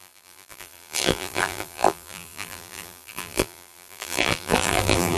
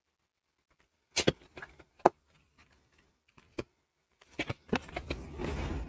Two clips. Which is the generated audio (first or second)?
first